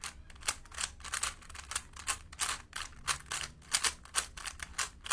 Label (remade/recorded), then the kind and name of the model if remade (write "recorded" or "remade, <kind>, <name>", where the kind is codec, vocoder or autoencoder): recorded